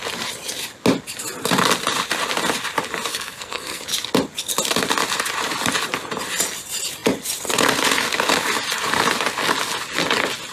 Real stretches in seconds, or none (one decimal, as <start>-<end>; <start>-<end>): 0.0-3.1; 3.8-10.5